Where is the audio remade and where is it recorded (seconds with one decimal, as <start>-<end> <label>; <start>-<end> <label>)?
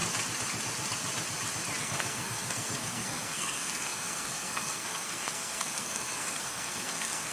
0.0-1.8 recorded; 1.8-7.3 remade